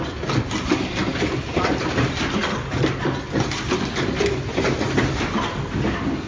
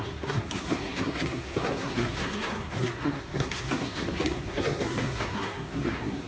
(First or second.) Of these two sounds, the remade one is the second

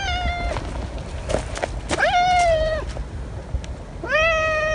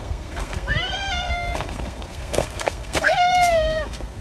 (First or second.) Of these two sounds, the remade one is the second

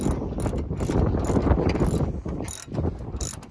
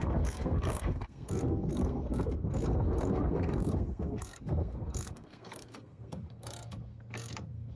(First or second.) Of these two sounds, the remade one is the second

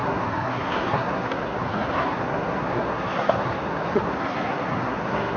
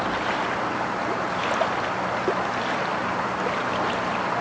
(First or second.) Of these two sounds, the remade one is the first